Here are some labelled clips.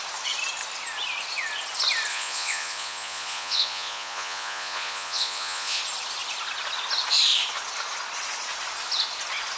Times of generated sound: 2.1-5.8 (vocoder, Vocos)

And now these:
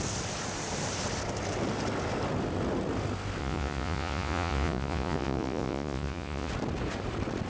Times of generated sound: 3.4-6.5 (vocoder, Vocos)

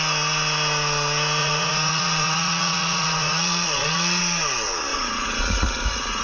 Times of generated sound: 1.4-4.2 (vocoder, Vocos); 4.9-6.2

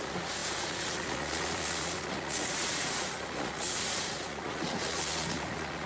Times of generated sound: 0.0-5.9 (vocoder, Vocos)

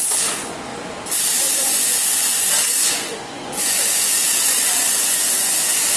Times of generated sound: 0.0-0.7 (vocoder, Vocos); 1.6-6.0

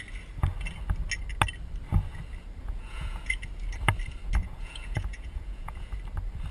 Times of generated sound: 2.6-3.3 (vocoder, Vocos); 4.4-5.9

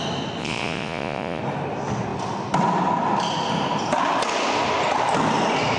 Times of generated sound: 0.4-1.4 (vocoder, Vocos)